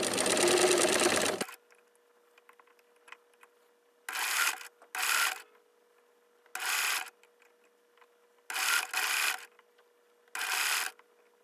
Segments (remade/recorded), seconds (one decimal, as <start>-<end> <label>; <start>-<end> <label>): 0.0-11.4 recorded